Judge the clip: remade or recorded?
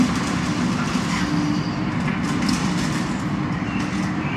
recorded